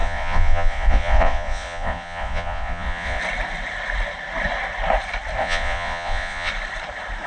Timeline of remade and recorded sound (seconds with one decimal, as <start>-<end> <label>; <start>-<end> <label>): 0.0-3.2 remade; 3.2-5.4 recorded; 5.4-6.5 remade; 6.5-7.3 recorded